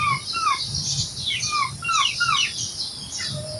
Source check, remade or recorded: recorded